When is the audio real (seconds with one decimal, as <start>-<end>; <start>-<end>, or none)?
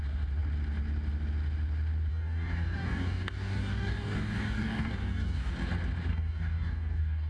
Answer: 0.0-2.1; 5.5-6.1